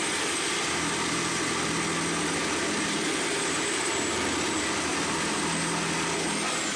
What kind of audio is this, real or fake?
real